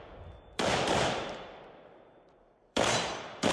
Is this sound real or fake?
fake